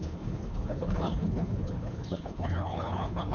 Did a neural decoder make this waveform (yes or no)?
yes